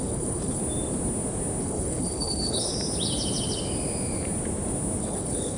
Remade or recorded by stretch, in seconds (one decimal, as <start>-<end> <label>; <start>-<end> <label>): 0.0-0.6 remade; 0.6-1.6 recorded; 1.6-2.7 remade; 2.7-5.0 recorded; 5.0-5.6 remade